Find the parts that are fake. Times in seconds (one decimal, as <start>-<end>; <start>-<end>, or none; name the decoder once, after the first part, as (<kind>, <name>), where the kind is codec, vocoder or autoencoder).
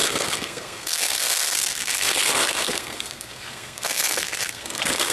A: 0.0-5.1 (codec, SNAC)